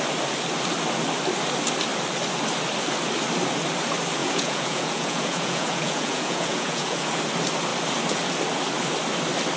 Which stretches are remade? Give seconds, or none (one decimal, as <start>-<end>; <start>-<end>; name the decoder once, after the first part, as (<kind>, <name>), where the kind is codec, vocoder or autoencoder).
4.2-7.2 (vocoder, Vocos)